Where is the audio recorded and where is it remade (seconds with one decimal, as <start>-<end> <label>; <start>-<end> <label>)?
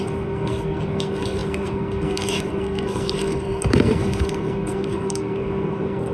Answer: 0.0-6.1 remade